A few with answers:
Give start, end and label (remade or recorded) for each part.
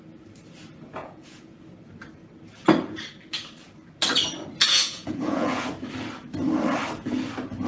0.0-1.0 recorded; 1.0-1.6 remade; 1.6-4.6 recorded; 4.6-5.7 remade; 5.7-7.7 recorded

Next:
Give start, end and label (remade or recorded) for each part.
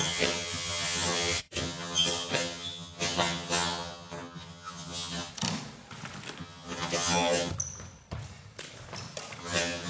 0.0-5.3 remade; 5.3-6.4 recorded; 6.4-7.5 remade; 7.5-9.4 recorded; 9.4-9.9 remade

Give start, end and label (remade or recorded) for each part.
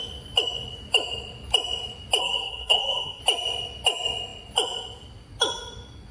0.0-2.2 recorded; 2.2-3.2 remade; 3.2-6.1 recorded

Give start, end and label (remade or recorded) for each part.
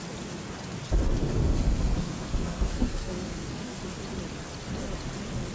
0.0-1.2 recorded; 1.2-3.8 remade; 3.8-5.5 recorded